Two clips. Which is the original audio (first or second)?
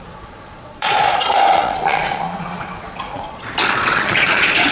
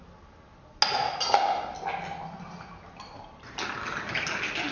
second